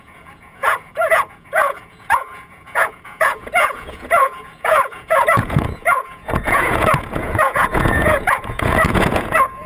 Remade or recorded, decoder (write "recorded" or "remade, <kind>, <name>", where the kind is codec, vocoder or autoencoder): remade, vocoder, Vocos